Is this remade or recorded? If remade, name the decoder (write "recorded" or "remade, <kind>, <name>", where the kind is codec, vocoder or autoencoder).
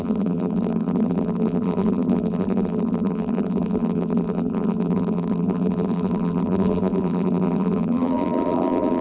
remade, vocoder, BigVGAN v2